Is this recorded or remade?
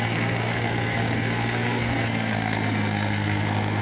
remade